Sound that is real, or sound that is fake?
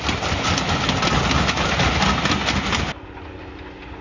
real